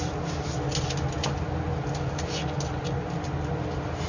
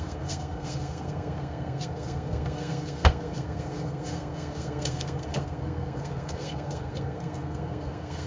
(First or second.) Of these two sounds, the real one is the first